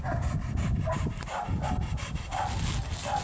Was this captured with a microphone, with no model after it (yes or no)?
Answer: yes